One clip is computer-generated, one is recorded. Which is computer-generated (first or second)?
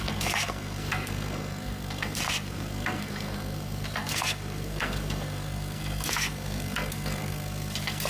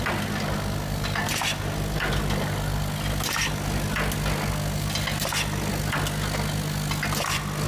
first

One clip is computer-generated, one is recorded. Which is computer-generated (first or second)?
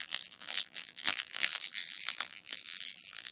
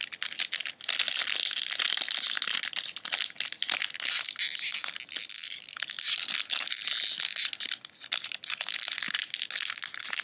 first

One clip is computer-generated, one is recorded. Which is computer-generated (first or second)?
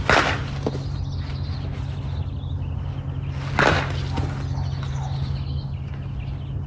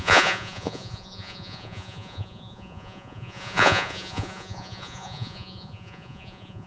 second